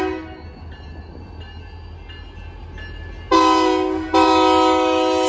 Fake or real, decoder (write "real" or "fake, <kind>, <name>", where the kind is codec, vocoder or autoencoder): real